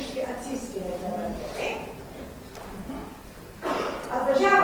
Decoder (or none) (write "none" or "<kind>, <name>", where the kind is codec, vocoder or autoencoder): none